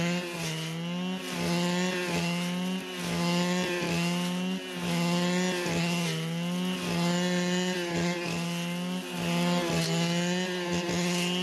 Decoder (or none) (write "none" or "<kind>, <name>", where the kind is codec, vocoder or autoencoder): none